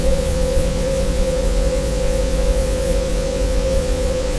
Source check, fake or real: fake